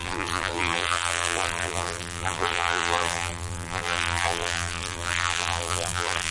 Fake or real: fake